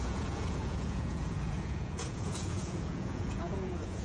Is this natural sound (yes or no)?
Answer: no